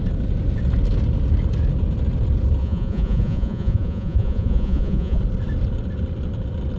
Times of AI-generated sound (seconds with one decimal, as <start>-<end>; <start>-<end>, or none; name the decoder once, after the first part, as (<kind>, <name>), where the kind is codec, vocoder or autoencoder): 2.6-5.2 (vocoder, Vocos)